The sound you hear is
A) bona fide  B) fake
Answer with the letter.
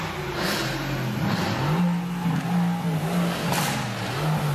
A